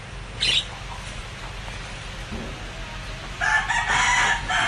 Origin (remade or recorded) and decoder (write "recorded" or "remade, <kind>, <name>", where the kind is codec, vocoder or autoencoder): recorded